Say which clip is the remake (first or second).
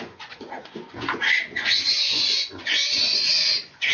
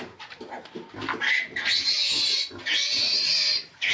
first